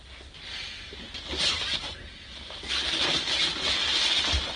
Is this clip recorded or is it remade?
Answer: recorded